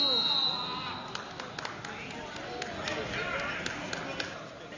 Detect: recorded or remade recorded